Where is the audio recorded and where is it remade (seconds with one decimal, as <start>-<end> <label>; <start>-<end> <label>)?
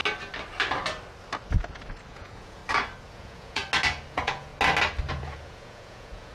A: 0.0-2.1 recorded; 2.1-2.6 remade; 2.6-3.1 recorded; 3.1-3.6 remade; 3.6-4.1 recorded; 4.1-4.5 remade; 4.5-5.1 recorded; 5.1-6.3 remade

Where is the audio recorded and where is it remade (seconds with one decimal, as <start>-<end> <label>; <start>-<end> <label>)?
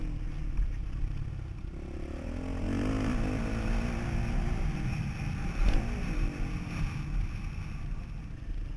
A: 0.0-0.4 recorded; 0.4-1.3 remade; 1.3-8.8 recorded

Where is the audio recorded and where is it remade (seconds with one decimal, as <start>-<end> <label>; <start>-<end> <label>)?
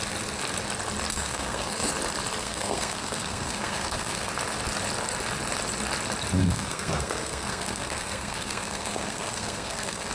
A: 0.0-1.1 recorded; 1.1-1.9 remade; 1.9-2.4 recorded; 2.4-4.3 remade; 4.3-6.4 recorded; 6.4-10.1 remade